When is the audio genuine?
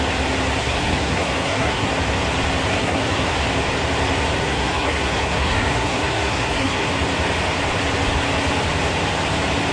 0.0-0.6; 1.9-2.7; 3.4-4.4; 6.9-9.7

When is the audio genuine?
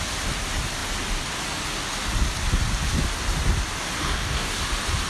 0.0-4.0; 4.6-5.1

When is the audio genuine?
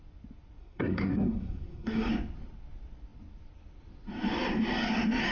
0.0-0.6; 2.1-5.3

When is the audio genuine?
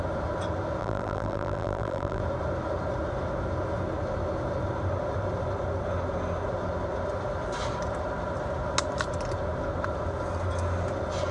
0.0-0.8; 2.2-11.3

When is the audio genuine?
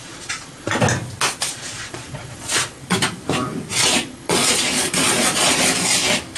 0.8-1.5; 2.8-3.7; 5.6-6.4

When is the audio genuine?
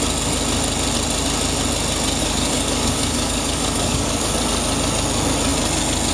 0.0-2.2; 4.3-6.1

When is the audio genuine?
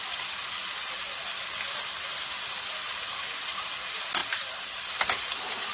0.0-5.7